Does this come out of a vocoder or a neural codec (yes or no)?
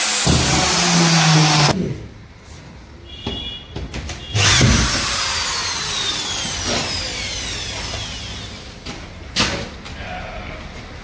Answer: no